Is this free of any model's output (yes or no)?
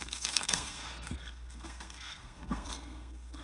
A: no